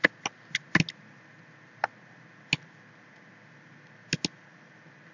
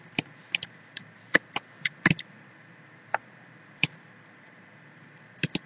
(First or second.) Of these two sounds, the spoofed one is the second